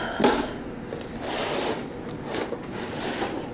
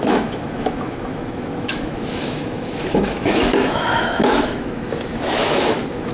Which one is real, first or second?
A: first